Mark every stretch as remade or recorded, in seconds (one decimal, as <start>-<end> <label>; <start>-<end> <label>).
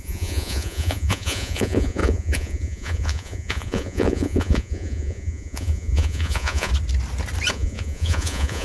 0.0-6.7 remade; 6.7-7.5 recorded; 7.5-8.6 remade